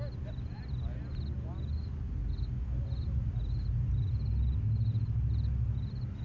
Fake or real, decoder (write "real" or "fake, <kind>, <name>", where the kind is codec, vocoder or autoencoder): real